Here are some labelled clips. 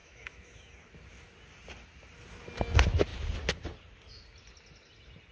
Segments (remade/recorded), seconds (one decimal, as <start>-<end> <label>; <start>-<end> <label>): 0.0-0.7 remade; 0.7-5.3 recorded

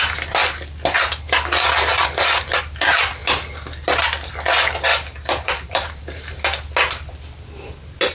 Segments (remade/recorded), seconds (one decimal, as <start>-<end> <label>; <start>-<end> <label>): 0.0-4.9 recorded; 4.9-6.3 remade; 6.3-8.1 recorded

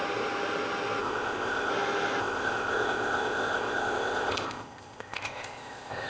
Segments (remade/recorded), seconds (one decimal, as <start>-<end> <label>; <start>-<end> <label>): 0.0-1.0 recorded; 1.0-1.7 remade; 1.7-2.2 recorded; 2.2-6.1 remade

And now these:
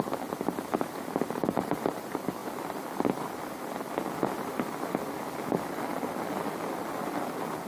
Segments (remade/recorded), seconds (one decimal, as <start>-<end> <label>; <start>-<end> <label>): 0.0-7.7 recorded